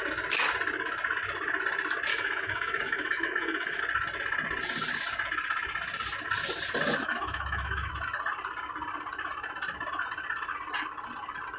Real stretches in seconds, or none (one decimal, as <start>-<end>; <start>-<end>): 0.0-2.1; 3.8-7.1; 7.9-11.6